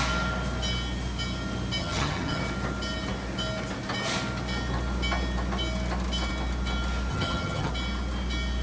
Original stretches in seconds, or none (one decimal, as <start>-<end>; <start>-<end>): 0.0-1.8; 2.4-7.1; 7.7-8.6